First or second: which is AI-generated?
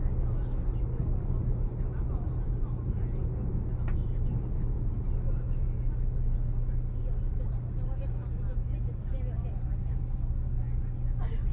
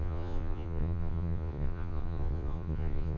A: second